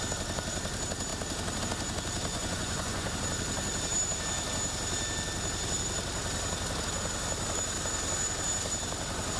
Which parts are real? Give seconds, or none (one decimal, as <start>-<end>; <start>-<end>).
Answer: 0.0-2.3; 3.1-9.4